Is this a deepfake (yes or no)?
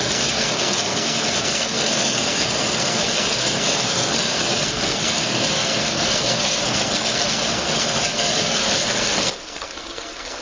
yes